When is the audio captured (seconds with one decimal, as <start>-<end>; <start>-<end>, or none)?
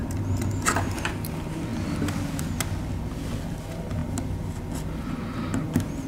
0.0-6.1